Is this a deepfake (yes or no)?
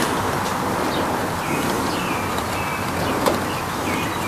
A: no